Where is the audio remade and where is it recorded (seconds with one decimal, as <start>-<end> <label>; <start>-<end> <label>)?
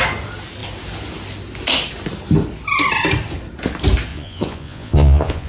0.0-4.1 recorded; 4.1-5.5 remade